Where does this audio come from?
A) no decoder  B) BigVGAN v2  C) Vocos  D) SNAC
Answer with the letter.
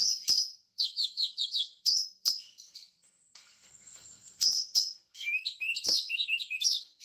D